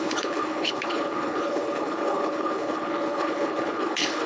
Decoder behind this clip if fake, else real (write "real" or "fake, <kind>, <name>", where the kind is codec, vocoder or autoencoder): fake, codec, HILCodec